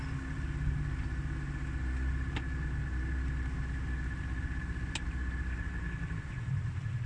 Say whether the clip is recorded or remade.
recorded